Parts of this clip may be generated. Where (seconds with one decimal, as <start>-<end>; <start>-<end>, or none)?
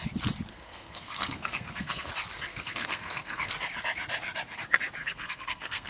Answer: 0.5-2.1; 2.5-3.5; 5.0-5.9